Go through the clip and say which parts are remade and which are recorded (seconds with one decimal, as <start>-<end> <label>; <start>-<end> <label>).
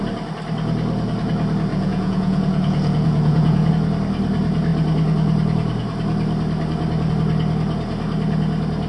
0.0-1.7 recorded; 1.7-3.7 remade; 3.7-8.9 recorded